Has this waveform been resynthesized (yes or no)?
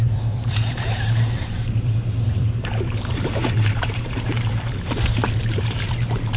yes